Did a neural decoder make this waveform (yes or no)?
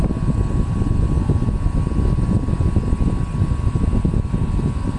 no